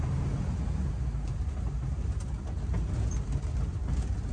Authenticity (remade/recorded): recorded